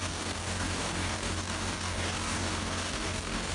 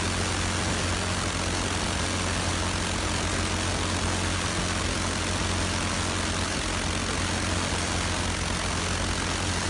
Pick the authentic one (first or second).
second